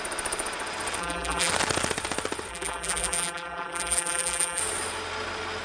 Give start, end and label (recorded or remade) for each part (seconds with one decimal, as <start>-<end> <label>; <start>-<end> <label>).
0.0-1.0 recorded; 1.0-1.5 remade; 1.5-2.5 recorded; 2.5-4.6 remade; 4.6-5.6 recorded

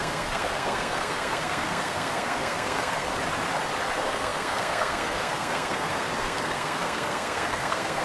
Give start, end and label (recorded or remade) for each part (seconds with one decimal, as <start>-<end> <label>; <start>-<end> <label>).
0.0-3.1 remade; 3.1-3.9 recorded; 3.9-8.0 remade

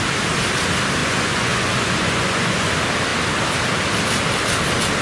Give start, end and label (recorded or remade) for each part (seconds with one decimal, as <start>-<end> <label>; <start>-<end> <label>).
0.0-1.0 recorded; 1.0-2.7 remade; 2.7-5.0 recorded

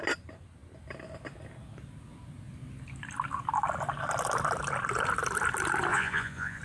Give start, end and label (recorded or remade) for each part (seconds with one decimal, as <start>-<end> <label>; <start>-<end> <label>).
0.0-5.9 recorded; 5.9-6.6 remade

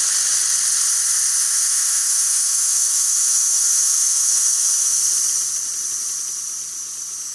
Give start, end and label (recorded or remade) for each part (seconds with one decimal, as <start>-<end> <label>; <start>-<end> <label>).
0.0-1.4 recorded; 1.4-5.0 remade; 5.0-7.3 recorded

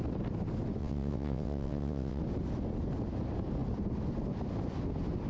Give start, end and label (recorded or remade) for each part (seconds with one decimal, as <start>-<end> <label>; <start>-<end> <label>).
0.0-0.8 recorded; 0.8-2.2 remade; 2.2-5.3 recorded

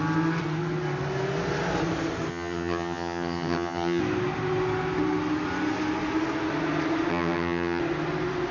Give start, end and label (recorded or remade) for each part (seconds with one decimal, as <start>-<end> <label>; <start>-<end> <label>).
0.0-2.3 recorded; 2.3-4.0 remade; 4.0-7.1 recorded; 7.1-7.8 remade; 7.8-8.5 recorded

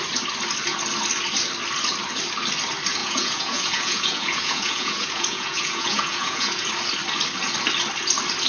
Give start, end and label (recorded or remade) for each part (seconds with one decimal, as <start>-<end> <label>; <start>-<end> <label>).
0.0-3.0 recorded; 3.0-6.7 remade; 6.7-8.5 recorded